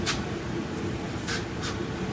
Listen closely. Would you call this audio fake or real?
fake